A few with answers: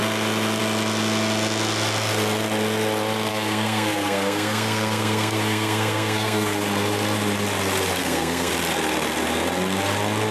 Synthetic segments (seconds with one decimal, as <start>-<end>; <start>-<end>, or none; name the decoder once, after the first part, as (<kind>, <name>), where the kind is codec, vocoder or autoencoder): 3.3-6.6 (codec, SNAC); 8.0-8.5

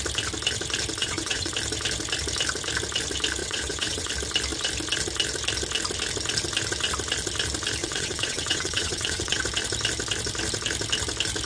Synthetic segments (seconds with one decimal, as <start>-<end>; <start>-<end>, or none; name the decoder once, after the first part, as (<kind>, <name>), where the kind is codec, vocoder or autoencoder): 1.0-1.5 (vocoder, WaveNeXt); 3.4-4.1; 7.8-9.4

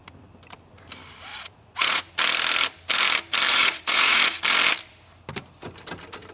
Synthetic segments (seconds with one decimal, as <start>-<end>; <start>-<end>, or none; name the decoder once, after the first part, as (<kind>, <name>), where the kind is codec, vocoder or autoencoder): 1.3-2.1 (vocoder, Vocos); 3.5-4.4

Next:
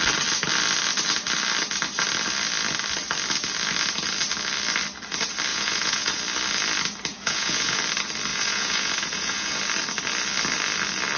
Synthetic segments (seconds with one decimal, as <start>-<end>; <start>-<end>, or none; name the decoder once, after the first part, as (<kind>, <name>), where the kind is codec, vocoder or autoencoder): 5.5-6.2 (vocoder, Vocos); 7.1-7.8; 8.3-9.6